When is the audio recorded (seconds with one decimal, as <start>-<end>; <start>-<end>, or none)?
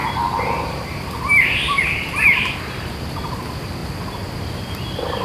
3.1-5.2